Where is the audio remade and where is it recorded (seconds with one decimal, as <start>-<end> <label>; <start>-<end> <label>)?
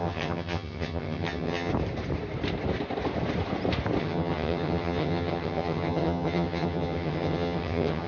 0.0-1.7 remade; 1.7-4.0 recorded; 4.0-8.1 remade